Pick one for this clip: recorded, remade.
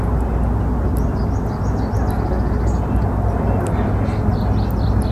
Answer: recorded